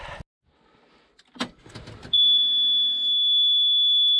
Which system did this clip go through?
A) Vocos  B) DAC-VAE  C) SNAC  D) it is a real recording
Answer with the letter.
D